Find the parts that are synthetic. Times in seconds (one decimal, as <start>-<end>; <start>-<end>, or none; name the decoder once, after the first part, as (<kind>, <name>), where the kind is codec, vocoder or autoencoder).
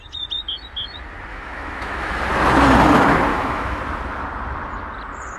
1.3-2.2 (autoencoder, DAC-VAE); 3.3-3.8